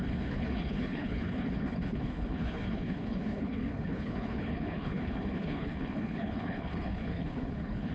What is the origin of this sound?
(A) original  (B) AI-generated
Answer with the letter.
B